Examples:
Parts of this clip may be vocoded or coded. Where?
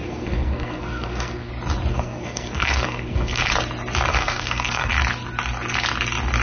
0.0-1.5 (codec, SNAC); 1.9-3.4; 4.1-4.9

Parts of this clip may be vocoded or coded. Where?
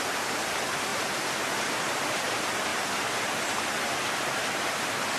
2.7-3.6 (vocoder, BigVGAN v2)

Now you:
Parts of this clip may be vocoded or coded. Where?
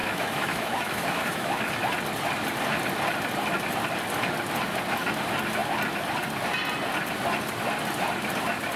0.0-1.7 (autoencoder, DAC-VAE)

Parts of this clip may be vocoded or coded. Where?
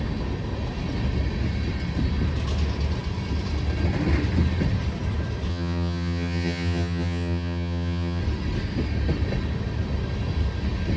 5.5-8.2 (vocoder, HiFi-GAN)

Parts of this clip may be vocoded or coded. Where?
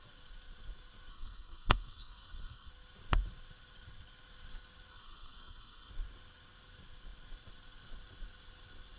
1.1-2.7 (codec, SNAC); 4.9-5.9